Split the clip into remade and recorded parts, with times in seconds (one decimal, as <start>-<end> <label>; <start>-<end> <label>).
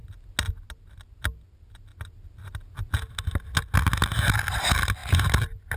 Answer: 0.0-5.8 recorded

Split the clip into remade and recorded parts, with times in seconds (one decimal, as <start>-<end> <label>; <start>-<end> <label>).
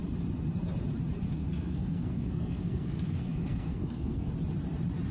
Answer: 0.0-1.4 recorded; 1.4-4.3 remade; 4.3-5.1 recorded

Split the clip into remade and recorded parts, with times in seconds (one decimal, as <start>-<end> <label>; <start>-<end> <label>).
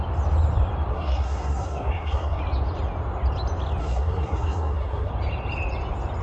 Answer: 0.0-0.9 recorded; 0.9-2.4 remade; 2.4-3.8 recorded; 3.8-5.1 remade; 5.1-6.2 recorded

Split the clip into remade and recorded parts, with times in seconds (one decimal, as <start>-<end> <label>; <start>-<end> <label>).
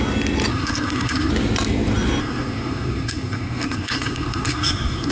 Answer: 0.0-0.5 recorded; 0.5-1.3 remade; 1.3-2.2 recorded; 2.2-5.1 remade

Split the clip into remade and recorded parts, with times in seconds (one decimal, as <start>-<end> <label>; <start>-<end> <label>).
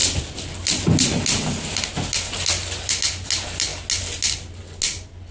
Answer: 0.0-5.3 recorded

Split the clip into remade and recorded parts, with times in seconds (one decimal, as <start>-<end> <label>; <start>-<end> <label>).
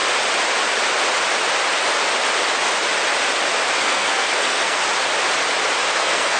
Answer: 0.0-3.8 recorded; 3.8-4.8 remade; 4.8-6.0 recorded; 6.0-6.4 remade